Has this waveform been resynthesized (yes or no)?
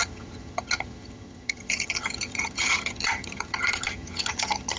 yes